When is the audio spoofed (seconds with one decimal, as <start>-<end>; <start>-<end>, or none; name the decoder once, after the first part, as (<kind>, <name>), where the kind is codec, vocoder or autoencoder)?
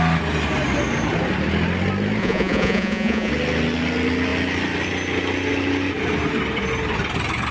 2.2-3.3 (vocoder, Vocos)